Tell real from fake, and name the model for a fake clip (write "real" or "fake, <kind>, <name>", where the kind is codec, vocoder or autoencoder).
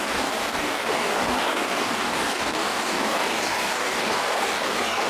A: fake, codec, DAC